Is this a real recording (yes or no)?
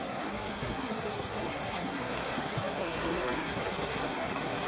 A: no